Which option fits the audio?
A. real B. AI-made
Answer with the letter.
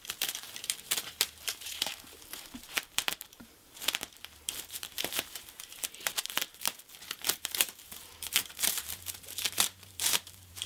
B